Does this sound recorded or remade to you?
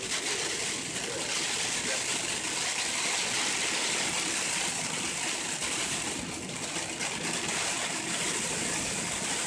recorded